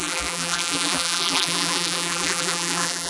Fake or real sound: fake